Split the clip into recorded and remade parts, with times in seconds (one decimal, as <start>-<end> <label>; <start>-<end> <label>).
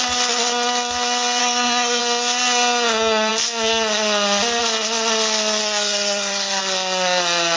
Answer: 0.0-1.4 recorded; 1.4-2.0 remade; 2.0-5.6 recorded; 5.6-6.6 remade; 6.6-7.6 recorded